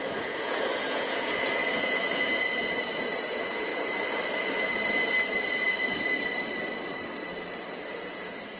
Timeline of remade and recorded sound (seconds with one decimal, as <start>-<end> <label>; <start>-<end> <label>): 0.0-3.7 remade; 3.7-7.9 recorded; 7.9-8.6 remade